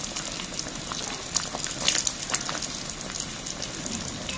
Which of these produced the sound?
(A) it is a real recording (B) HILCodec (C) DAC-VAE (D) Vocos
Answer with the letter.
A